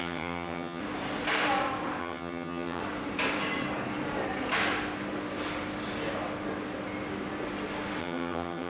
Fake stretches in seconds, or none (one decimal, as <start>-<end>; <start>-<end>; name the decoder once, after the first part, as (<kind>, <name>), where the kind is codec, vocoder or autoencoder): 0.0-0.8 (vocoder, HiFi-GAN); 2.0-2.8; 8.0-8.7